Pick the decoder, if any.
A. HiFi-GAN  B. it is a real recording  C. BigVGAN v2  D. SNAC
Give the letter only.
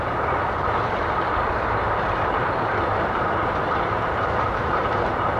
C